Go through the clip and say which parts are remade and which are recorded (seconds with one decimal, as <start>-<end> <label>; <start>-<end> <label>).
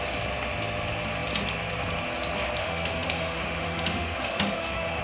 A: 0.0-2.6 recorded; 2.6-5.0 remade